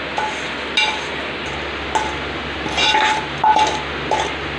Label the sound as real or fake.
real